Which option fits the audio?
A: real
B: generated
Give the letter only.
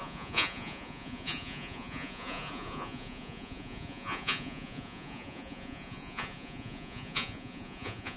B